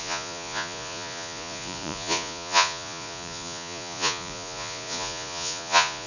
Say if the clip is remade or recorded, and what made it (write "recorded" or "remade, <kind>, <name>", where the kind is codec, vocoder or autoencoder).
remade, vocoder, Vocos